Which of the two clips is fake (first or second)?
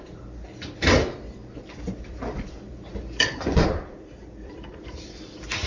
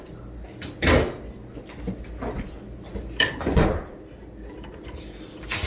first